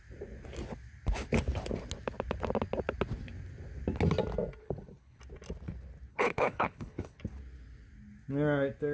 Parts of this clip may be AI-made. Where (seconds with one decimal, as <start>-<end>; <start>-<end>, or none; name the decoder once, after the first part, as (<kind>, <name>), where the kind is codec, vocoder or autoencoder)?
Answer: 4.6-5.2 (codec, HILCodec); 6.1-7.2